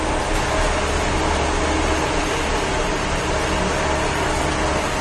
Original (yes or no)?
yes